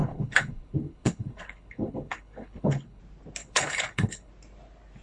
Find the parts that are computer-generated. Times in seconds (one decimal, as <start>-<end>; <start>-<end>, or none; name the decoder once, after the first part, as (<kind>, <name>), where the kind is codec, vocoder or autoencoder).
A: 0.0-3.0 (codec, HILCodec); 3.4-4.3